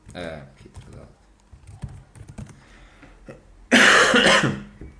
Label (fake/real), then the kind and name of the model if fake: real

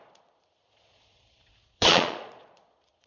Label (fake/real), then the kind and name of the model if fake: fake, vocoder, Vocos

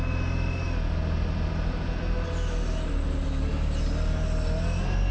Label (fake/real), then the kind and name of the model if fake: real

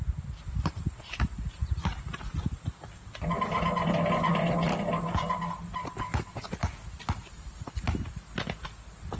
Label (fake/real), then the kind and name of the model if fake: real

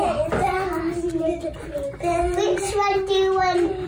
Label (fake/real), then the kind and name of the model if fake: real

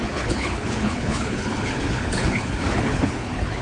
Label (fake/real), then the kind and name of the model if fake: fake, codec, HILCodec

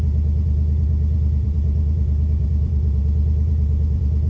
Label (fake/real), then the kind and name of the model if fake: fake, vocoder, BigVGAN v2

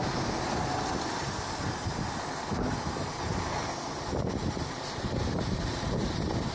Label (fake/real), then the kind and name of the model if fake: real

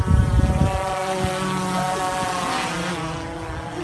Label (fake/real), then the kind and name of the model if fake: real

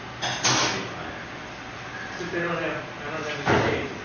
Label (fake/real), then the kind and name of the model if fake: real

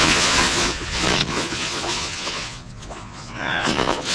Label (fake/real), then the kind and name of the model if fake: fake, vocoder, Vocos